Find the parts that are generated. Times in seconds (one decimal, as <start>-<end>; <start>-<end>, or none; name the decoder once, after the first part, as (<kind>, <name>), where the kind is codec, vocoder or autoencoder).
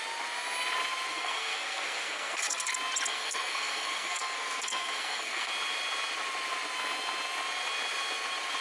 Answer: 1.1-2.7 (codec, SNAC); 3.1-5.5